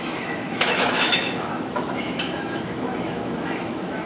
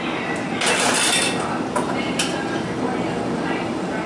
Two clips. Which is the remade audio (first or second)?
first